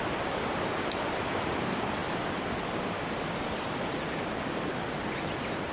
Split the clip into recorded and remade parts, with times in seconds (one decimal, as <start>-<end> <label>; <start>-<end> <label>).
0.0-5.7 recorded